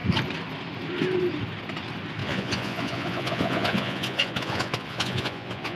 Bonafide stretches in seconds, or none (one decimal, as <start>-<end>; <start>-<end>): 0.0-2.2